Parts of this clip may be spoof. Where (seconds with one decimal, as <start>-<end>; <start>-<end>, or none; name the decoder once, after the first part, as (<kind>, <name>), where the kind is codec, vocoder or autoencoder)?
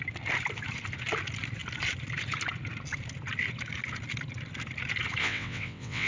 5.2-6.1 (vocoder, WaveNeXt)